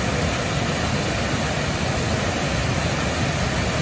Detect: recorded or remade recorded